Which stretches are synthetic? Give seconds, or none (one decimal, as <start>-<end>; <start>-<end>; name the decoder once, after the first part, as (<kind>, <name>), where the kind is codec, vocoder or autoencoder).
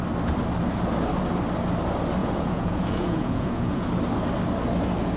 2.2-3.9 (vocoder, Vocos)